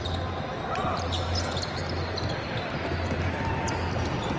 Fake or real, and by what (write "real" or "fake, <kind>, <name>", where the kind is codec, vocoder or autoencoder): real